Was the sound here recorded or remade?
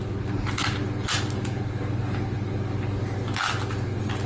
recorded